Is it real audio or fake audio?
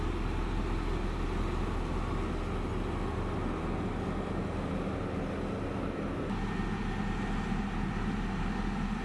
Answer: real